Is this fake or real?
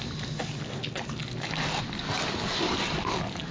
real